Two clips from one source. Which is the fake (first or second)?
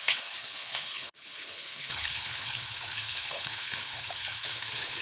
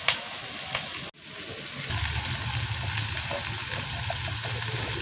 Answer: first